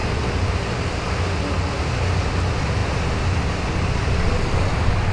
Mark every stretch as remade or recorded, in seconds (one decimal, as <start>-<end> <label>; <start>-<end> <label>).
0.0-5.1 recorded